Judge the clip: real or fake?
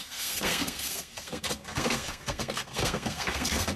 fake